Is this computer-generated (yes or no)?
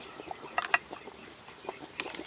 no